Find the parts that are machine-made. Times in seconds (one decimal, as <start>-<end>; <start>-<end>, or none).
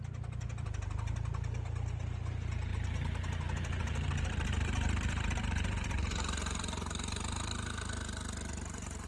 2.7-7.6